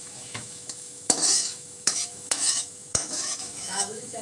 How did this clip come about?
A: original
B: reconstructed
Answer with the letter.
B